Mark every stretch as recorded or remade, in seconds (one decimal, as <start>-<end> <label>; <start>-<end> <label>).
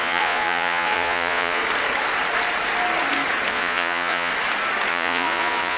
0.0-1.6 remade; 1.6-3.5 recorded; 3.5-4.3 remade; 4.3-4.9 recorded; 4.9-5.8 remade